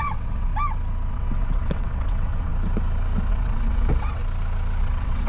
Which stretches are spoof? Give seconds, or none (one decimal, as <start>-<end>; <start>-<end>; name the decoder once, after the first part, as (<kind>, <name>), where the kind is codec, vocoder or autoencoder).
0.0-0.5 (vocoder, WaveNeXt); 1.1-2.5; 3.3-4.2; 4.8-5.3